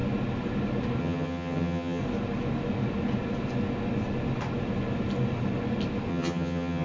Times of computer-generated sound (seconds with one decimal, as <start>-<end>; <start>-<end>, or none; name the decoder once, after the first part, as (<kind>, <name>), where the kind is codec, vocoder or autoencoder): 1.0-2.0 (vocoder, HiFi-GAN); 6.1-6.8